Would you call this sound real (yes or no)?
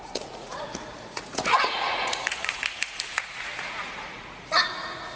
no